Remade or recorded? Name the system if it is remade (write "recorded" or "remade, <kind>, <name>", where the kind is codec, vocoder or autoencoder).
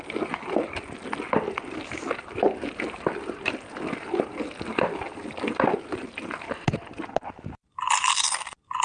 recorded